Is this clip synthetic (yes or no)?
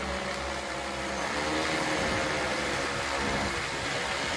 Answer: no